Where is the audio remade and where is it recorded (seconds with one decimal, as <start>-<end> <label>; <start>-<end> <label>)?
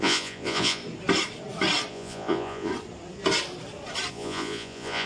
0.0-0.8 remade; 0.8-1.9 recorded; 1.9-2.7 remade; 2.7-4.1 recorded; 4.1-5.1 remade